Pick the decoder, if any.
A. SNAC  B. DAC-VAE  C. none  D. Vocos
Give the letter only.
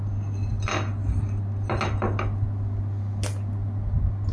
C